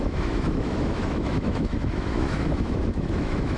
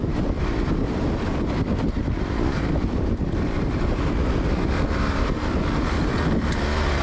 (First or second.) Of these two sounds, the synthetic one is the first